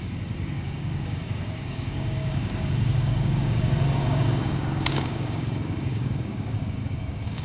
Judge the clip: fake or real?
fake